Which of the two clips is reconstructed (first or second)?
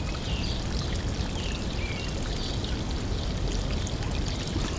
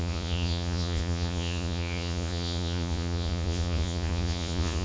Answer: second